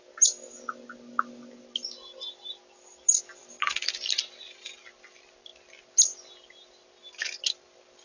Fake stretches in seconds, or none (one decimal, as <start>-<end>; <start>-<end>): none